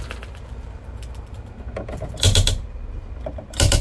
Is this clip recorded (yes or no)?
yes